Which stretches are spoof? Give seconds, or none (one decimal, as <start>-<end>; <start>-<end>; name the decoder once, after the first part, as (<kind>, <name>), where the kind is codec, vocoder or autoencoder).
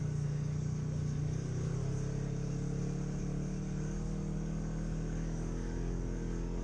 0.0-1.8 (codec, DAC); 3.2-6.6